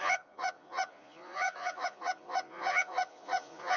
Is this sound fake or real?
fake